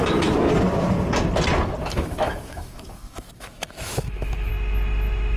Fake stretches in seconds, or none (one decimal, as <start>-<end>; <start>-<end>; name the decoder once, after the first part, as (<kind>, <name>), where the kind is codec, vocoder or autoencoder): 1.8-4.5 (autoencoder, DAC-VAE)